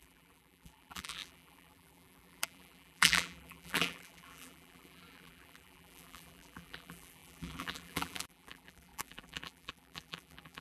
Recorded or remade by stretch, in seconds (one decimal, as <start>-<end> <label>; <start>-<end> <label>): 0.0-10.6 remade